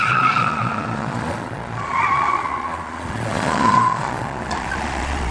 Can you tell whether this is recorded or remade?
remade